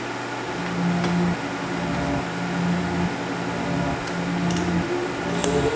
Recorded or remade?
recorded